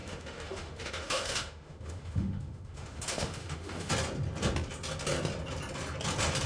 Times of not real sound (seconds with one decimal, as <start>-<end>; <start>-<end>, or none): 0.0-3.9